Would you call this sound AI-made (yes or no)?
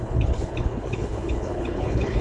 yes